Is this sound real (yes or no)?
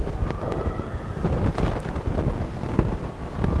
yes